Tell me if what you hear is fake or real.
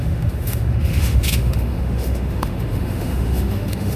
fake